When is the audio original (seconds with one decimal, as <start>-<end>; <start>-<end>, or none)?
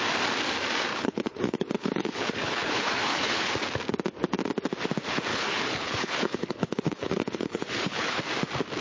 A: 0.0-0.9; 3.5-5.3; 8.2-8.8